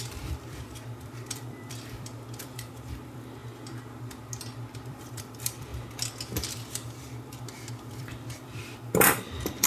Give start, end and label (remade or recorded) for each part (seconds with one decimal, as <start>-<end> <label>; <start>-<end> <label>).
0.0-3.4 remade; 3.4-4.9 recorded; 4.9-5.7 remade; 5.7-6.5 recorded; 6.5-9.7 remade